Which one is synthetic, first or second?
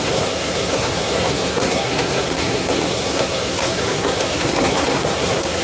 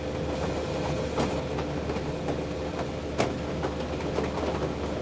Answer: first